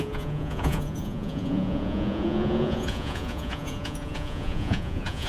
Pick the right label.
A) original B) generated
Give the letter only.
B